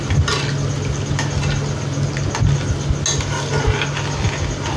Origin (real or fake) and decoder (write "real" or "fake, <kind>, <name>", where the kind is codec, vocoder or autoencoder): real